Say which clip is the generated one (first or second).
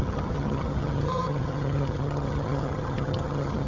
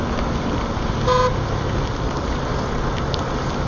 first